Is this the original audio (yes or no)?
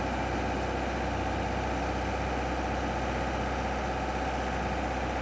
yes